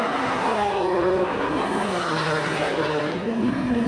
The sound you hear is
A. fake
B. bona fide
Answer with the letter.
A